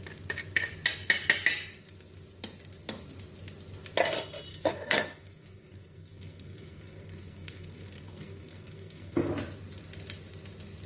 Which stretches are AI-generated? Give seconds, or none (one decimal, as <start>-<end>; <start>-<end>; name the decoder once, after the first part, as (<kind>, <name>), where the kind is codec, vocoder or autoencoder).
4.5-9.3 (codec, SNAC)